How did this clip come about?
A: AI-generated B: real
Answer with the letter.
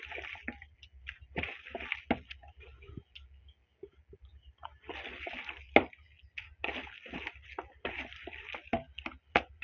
B